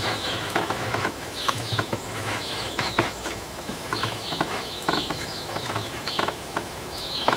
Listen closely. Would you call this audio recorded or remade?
remade